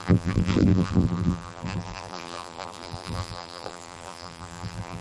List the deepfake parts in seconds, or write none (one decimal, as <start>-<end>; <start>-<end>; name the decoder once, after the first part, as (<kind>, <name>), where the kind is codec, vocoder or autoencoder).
0.0-5.0 (vocoder, BigVGAN v2)